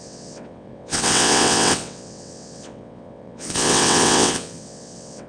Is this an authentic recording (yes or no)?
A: no